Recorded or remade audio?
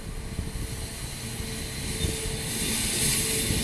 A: recorded